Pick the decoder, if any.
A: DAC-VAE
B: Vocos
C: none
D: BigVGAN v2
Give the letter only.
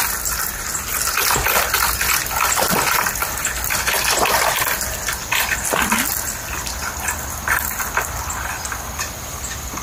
C